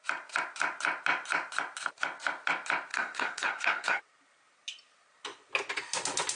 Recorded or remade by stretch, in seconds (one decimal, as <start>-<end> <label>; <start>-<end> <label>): 0.0-2.9 recorded; 2.9-4.0 remade; 4.0-6.4 recorded